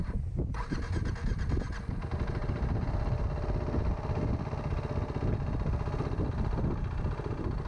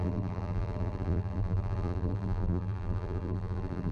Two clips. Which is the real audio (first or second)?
first